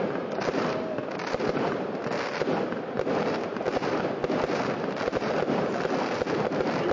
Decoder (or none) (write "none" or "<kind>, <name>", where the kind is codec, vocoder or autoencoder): none